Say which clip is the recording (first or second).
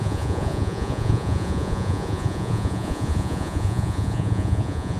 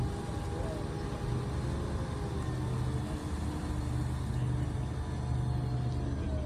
second